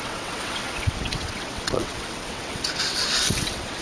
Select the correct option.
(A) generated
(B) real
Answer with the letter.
A